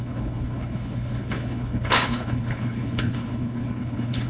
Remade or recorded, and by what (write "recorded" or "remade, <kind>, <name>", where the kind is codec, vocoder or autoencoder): remade, codec, HILCodec